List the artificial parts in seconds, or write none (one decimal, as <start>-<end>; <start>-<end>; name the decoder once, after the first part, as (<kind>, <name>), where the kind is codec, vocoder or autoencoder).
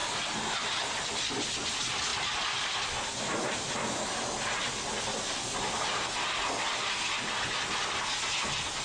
none